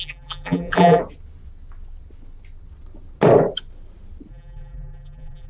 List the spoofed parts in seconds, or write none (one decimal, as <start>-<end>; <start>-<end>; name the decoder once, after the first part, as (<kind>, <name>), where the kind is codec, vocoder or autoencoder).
0.0-1.0 (vocoder, BigVGAN v2); 4.3-5.5